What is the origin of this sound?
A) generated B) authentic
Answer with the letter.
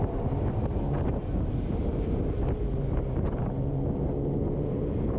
A